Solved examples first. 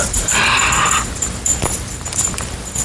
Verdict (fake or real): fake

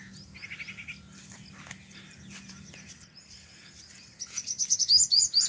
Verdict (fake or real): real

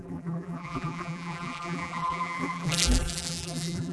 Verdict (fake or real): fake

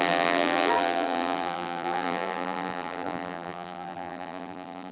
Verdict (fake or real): fake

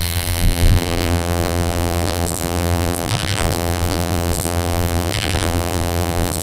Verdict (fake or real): fake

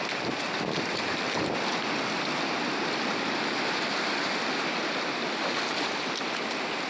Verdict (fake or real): fake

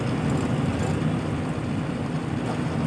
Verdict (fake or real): real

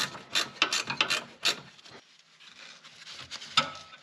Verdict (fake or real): real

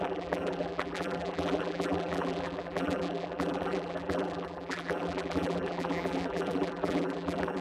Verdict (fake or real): fake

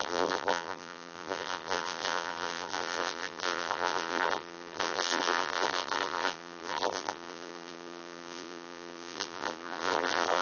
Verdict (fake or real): fake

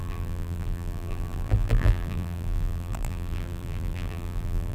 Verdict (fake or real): fake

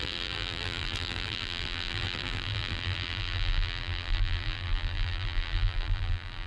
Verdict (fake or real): fake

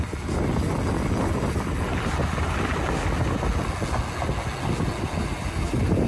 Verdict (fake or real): real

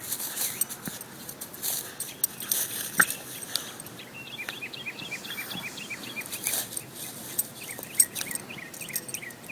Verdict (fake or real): real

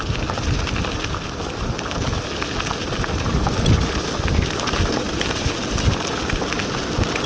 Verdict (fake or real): real